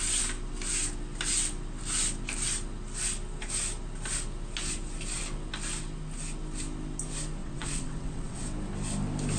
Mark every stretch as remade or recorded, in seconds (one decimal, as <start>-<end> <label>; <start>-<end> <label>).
0.0-7.4 recorded; 7.4-8.4 remade; 8.4-9.4 recorded